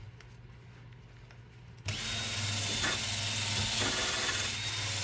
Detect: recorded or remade recorded